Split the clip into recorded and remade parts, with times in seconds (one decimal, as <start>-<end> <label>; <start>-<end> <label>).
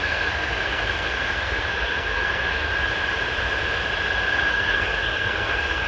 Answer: 0.0-2.7 remade; 2.7-4.3 recorded; 4.3-5.9 remade